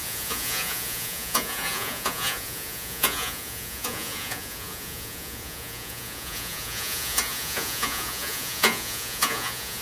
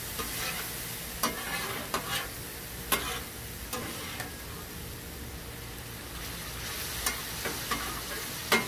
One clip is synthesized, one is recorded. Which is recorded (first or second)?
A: second